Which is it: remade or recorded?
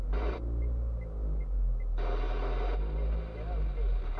recorded